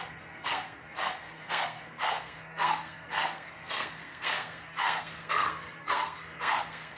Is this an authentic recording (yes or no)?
no